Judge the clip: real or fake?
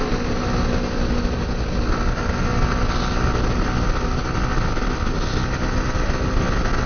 real